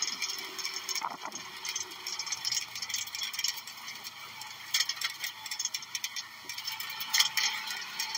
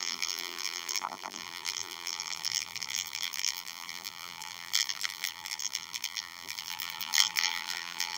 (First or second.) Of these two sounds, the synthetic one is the second